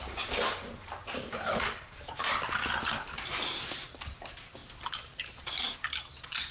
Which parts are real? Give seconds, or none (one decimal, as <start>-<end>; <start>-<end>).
0.0-1.0; 3.3-4.6; 5.5-6.5